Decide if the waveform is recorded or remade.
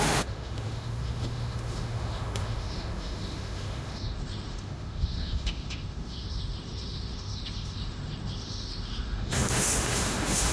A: remade